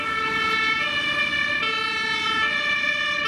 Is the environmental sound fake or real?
fake